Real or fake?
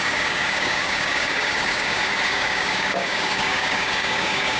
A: fake